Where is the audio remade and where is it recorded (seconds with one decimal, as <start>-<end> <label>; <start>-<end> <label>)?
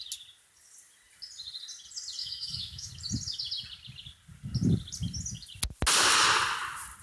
0.0-2.2 recorded; 2.2-2.9 remade; 2.9-7.0 recorded